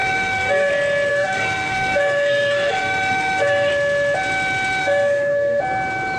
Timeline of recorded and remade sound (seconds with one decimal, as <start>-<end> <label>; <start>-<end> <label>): 0.0-0.7 remade; 0.7-1.1 recorded; 1.1-3.7 remade; 3.7-4.8 recorded; 4.8-5.6 remade; 5.6-6.2 recorded